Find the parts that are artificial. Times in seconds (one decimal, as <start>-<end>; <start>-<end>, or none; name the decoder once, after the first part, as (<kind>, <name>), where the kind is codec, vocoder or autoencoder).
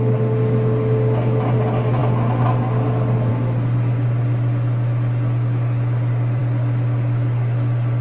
none